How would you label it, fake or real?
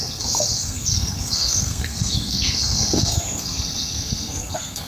fake